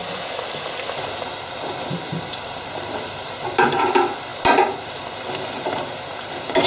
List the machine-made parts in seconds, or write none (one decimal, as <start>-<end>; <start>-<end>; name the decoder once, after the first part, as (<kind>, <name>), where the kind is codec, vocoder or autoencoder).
2.1-3.9 (vocoder, BigVGAN v2)